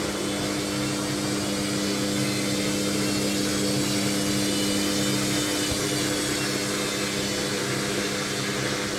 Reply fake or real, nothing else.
real